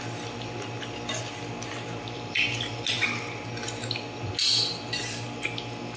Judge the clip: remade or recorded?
recorded